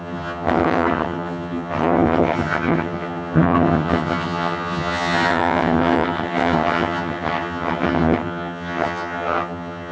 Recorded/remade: remade